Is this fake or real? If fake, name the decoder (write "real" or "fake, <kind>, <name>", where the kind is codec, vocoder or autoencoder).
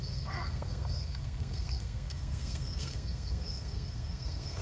fake, codec, SNAC